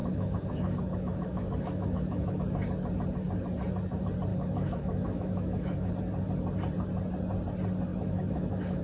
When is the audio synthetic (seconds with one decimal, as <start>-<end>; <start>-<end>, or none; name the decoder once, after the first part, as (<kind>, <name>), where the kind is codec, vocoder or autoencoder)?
0.0-2.4 (autoencoder, DAC-VAE); 4.3-5.9; 7.9-8.8